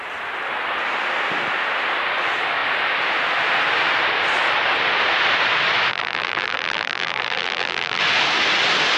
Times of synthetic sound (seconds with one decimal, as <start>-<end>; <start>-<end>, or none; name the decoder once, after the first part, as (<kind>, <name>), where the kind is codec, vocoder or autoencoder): 5.9-8.0 (vocoder, BigVGAN v2)